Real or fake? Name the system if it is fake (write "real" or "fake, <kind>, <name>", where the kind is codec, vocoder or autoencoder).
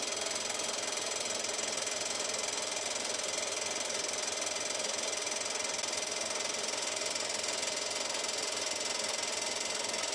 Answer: real